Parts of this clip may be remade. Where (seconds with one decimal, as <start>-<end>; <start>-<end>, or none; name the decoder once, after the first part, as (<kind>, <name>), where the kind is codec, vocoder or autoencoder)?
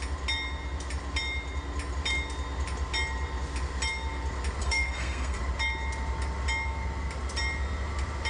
4.6-5.4 (codec, SNAC)